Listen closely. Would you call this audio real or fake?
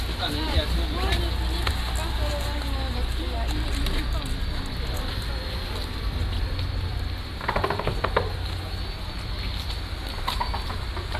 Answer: real